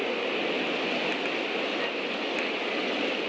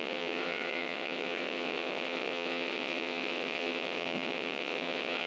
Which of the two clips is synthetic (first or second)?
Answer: second